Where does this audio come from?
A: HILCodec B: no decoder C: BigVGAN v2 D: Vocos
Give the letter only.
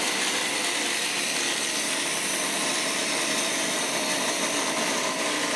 B